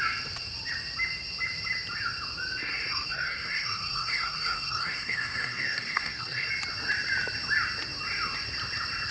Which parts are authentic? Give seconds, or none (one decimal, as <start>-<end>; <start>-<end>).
0.0-2.6; 6.5-9.1